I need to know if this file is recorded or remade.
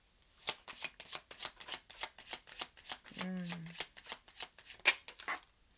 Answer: recorded